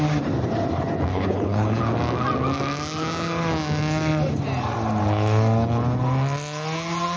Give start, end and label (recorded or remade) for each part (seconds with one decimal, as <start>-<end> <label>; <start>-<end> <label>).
0.0-1.1 recorded; 1.1-1.8 remade; 1.8-7.2 recorded